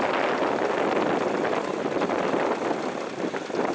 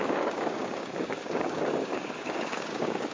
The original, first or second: first